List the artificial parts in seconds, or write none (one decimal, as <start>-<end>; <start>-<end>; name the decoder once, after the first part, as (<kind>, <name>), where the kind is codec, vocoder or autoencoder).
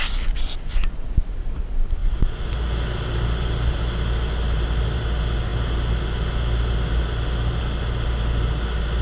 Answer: none